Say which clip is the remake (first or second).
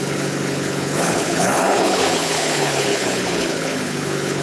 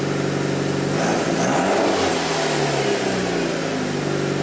first